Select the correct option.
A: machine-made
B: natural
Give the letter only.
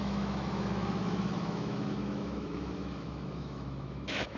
A